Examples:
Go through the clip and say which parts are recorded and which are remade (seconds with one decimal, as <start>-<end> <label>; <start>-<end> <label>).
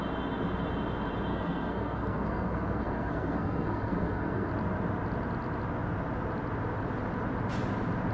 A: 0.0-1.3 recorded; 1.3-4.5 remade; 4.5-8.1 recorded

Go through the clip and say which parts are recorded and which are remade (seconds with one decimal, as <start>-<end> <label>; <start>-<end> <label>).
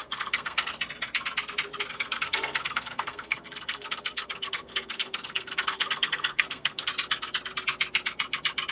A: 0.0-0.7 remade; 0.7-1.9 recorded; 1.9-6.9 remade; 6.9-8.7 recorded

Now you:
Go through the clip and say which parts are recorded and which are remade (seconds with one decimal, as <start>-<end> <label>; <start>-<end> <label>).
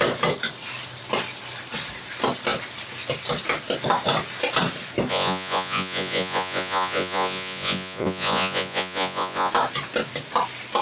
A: 0.0-5.1 recorded; 5.1-9.5 remade; 9.5-10.8 recorded